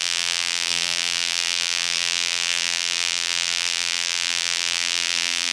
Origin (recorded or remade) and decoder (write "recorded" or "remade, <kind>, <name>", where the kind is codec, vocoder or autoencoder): remade, vocoder, BigVGAN v2